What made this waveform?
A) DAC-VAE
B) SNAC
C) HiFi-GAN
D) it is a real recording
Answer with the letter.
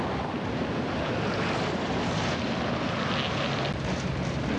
D